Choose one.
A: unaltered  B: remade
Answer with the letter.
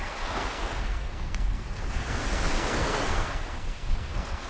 B